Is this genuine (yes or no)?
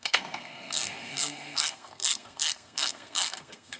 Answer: no